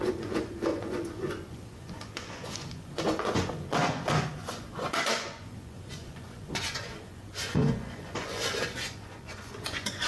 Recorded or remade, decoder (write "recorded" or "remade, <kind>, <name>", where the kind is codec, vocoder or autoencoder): remade, vocoder, Vocos